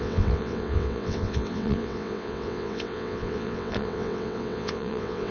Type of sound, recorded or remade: remade